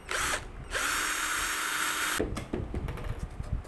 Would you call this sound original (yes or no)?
yes